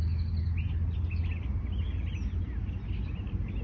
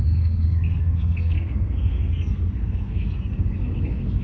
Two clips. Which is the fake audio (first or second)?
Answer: second